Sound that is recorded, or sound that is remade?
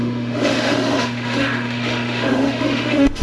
remade